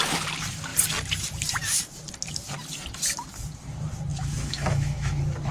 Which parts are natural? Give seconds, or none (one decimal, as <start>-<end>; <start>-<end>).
0.0-4.1; 5.1-5.5

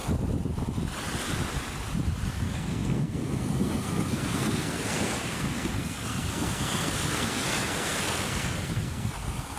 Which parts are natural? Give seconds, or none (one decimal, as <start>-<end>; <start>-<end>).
0.0-2.3

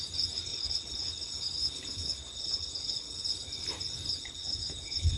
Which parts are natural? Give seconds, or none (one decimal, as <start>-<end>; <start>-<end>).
0.0-0.5; 3.6-4.1

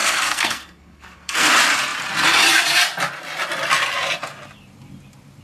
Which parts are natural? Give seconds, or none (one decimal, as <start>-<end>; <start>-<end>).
1.5-5.4